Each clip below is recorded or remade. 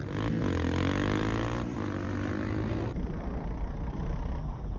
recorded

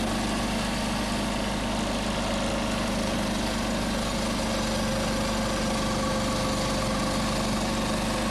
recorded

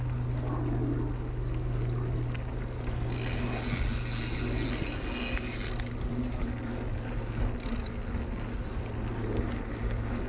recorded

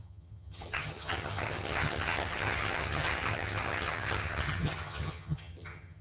remade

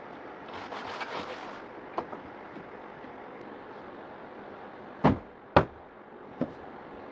recorded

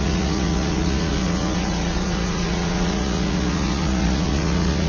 remade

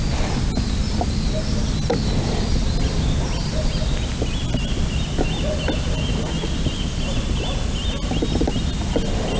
recorded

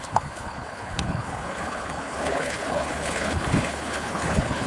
remade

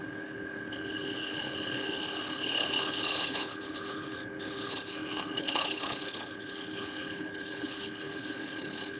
remade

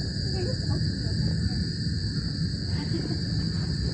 recorded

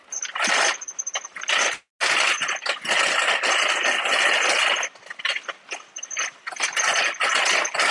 recorded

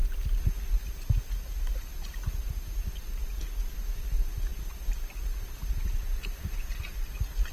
recorded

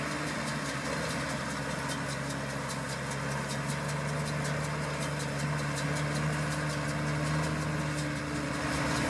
recorded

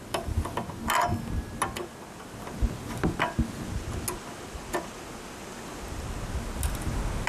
recorded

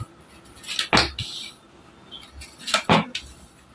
recorded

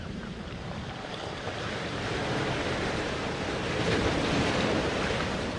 remade